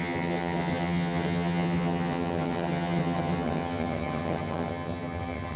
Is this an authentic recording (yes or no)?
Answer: no